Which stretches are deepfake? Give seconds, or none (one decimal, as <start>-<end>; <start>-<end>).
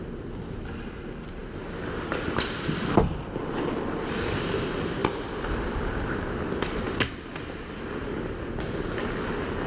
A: none